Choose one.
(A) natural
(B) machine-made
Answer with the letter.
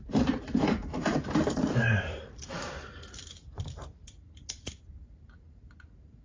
B